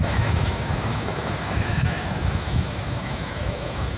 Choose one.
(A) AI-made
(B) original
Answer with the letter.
A